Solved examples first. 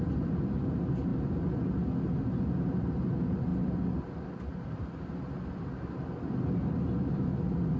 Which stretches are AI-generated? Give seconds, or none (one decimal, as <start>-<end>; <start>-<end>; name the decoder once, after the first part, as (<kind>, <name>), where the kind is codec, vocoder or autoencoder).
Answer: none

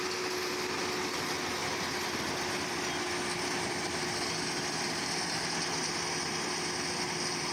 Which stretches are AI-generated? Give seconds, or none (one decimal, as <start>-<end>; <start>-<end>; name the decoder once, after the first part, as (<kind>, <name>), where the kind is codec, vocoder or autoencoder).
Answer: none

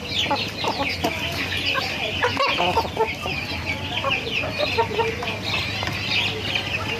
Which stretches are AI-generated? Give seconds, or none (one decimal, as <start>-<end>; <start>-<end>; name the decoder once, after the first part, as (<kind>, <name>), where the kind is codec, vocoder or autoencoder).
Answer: none

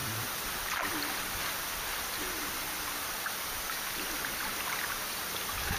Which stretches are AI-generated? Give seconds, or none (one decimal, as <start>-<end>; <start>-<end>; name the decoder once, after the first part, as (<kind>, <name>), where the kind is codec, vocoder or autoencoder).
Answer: 0.0-1.2 (vocoder, BigVGAN v2)

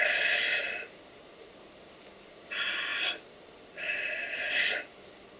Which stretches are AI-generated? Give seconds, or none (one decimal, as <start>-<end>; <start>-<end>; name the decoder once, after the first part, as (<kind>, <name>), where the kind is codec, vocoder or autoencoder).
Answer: none

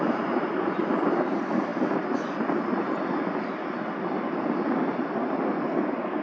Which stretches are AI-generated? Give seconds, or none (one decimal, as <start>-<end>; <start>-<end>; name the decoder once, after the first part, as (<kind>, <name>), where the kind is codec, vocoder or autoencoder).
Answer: none